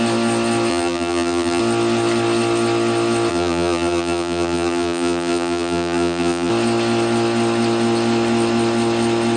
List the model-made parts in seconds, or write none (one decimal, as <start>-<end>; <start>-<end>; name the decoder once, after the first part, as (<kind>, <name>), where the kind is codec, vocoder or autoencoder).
0.7-1.6 (vocoder, BigVGAN v2); 3.3-6.5